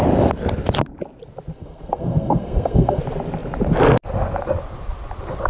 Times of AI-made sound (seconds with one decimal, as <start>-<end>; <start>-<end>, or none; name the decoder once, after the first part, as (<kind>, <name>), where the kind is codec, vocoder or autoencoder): 1.5-3.0 (codec, SNAC)